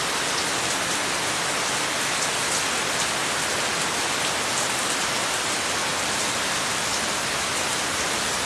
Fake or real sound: real